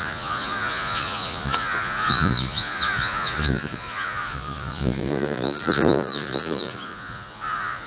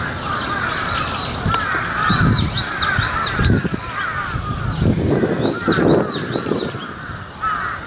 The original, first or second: second